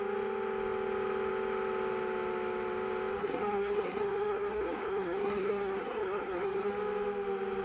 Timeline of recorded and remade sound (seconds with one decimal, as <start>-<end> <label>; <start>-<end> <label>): 0.0-3.2 recorded; 3.2-6.7 remade; 6.7-7.6 recorded